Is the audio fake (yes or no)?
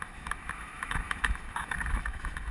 yes